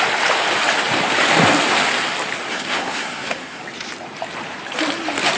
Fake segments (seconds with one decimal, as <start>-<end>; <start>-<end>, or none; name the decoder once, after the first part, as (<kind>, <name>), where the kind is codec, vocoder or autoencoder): 2.5-3.6 (codec, SNAC)